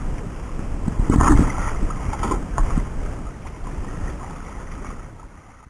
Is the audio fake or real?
real